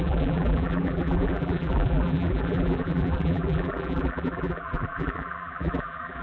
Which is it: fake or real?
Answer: fake